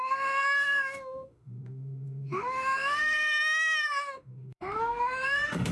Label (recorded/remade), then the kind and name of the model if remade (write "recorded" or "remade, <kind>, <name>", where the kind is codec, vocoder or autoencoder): remade, autoencoder, DAC-VAE